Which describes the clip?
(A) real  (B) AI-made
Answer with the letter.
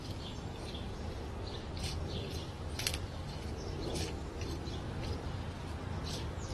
A